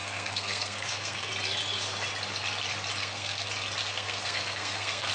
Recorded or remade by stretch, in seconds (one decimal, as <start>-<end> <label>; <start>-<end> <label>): 0.0-1.3 remade; 1.3-3.0 recorded; 3.0-3.5 remade; 3.5-3.9 recorded; 3.9-5.1 remade

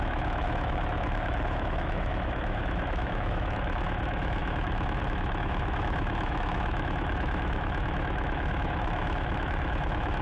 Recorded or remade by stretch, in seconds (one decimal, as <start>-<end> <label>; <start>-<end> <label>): 0.0-10.2 remade

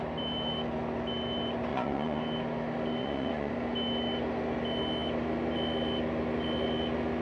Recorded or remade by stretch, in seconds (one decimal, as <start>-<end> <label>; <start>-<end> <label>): 0.0-1.7 recorded; 1.7-2.2 remade; 2.2-3.0 recorded; 3.0-3.5 remade; 3.5-7.2 recorded

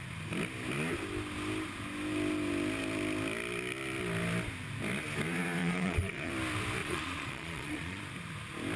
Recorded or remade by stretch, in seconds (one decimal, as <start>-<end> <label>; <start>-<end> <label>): 0.0-5.6 recorded; 5.6-6.3 remade; 6.3-6.8 recorded; 6.8-8.0 remade; 8.0-8.8 recorded

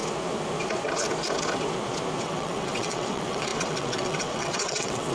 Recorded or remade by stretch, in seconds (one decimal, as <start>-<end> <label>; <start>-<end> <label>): 0.0-2.2 recorded; 2.2-5.1 remade